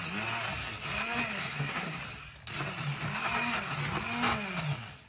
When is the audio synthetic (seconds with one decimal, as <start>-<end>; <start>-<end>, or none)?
1.4-2.0